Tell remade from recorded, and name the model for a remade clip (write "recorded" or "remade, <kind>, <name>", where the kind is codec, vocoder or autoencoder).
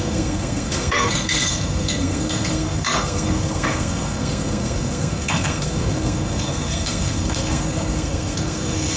remade, codec, SNAC